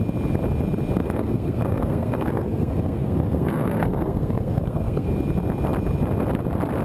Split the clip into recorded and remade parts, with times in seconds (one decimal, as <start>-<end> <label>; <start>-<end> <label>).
0.0-1.0 recorded; 1.0-5.1 remade; 5.1-6.8 recorded